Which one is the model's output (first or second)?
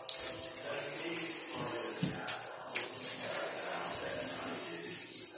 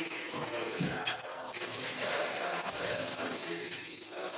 second